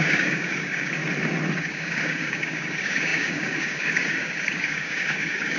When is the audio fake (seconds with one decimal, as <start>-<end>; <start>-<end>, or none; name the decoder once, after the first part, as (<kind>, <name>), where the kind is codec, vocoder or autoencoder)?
0.0-1.0 (codec, DAC); 1.6-5.6